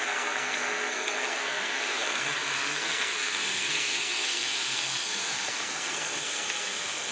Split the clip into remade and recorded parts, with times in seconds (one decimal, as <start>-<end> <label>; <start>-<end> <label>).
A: 0.0-7.1 remade